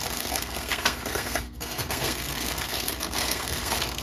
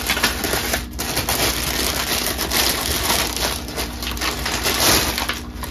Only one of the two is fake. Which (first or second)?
first